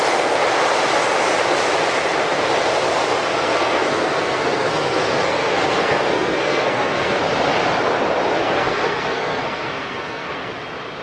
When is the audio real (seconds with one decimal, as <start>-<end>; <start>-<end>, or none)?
0.0-3.3; 7.2-8.4; 10.5-11.0